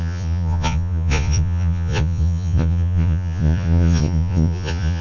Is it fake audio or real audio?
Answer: fake